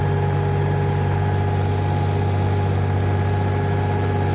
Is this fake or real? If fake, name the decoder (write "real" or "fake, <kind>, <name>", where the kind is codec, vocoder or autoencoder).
real